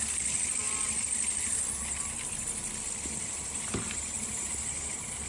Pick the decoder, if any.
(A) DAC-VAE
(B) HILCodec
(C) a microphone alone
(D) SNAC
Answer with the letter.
C